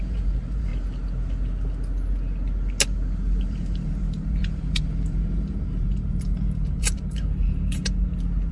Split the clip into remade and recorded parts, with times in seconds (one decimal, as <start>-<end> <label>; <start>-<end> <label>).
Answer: 0.0-0.7 remade; 0.7-3.4 recorded; 3.4-7.8 remade; 7.8-8.5 recorded